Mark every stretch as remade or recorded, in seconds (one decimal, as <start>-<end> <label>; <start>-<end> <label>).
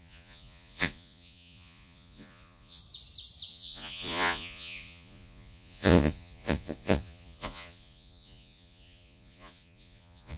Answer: 0.0-2.8 remade; 2.8-3.5 recorded; 3.5-10.4 remade